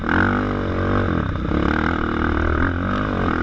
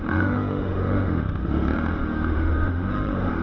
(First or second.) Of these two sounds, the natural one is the first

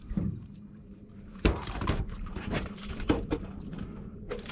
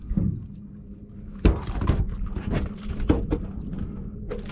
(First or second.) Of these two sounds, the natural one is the second